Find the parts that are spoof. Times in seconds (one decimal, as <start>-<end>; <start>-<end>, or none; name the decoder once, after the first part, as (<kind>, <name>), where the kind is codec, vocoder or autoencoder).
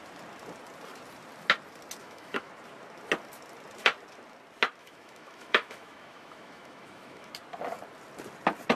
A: 2.0-2.5 (autoencoder, DAC-VAE); 4.8-7.3